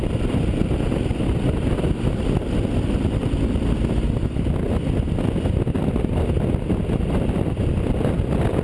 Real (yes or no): no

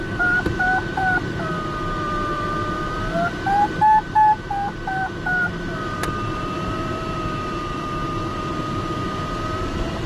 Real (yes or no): no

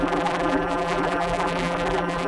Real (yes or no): no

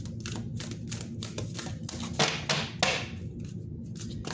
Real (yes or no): yes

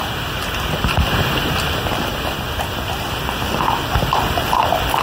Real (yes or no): no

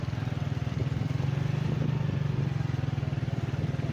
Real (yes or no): yes